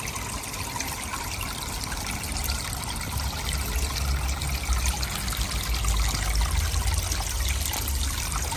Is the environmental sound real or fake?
real